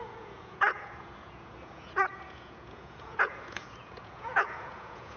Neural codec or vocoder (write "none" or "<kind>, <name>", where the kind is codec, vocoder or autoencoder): vocoder, Vocos